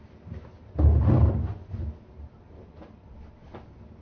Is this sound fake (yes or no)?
no